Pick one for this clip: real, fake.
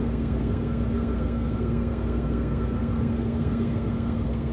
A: fake